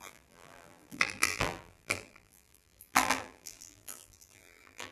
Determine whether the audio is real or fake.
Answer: fake